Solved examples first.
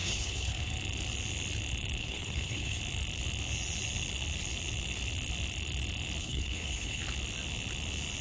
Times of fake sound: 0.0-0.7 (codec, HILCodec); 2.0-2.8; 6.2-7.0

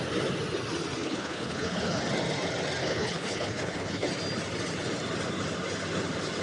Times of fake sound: 1.0-2.0 (codec, HILCodec); 2.8-4.1

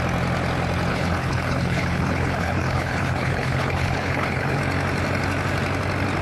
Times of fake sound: 0.9-4.6 (codec, HILCodec)